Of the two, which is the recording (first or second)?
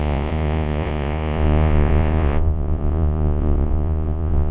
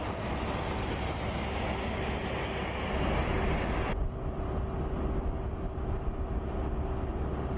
second